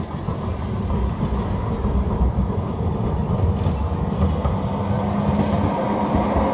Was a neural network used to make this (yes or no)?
no